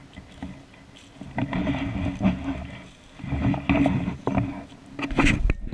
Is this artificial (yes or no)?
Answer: no